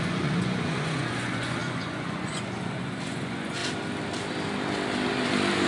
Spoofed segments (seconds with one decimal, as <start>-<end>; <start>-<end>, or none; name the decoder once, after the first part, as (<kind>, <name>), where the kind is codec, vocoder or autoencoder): 0.0-3.6 (vocoder, Vocos)